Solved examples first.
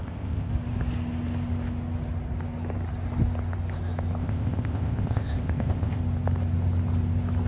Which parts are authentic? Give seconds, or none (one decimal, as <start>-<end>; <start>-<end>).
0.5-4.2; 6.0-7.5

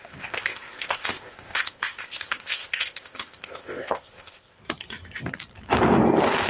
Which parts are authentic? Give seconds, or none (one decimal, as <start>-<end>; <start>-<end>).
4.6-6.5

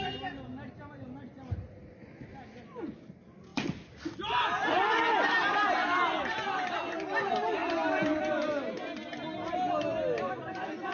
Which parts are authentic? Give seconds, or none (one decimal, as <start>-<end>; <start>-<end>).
0.0-10.9

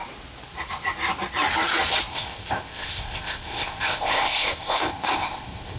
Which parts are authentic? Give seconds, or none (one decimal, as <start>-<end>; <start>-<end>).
0.0-2.1

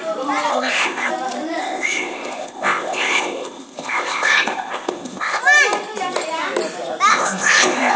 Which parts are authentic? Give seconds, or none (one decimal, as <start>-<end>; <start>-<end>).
0.0-0.5; 1.1-1.6; 5.4-7.1